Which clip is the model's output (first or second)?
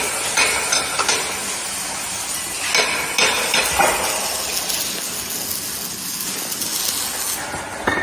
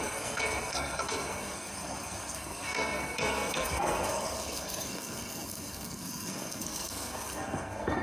second